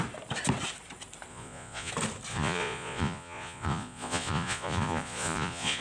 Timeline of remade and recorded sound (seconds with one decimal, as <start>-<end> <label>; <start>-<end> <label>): 0.0-1.3 recorded; 1.3-1.9 remade; 1.9-2.3 recorded; 2.3-5.8 remade